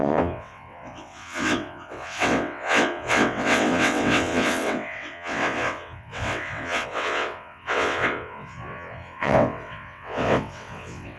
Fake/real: fake